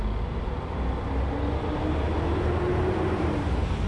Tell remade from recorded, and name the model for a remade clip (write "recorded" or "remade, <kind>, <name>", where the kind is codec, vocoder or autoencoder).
recorded